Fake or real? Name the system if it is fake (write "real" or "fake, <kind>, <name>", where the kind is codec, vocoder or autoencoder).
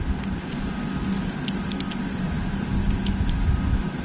real